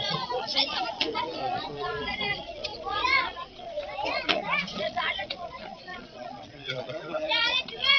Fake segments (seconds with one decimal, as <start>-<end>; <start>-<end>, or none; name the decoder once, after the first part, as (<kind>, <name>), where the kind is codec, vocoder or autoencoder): 0.0-8.0 (vocoder, Vocos)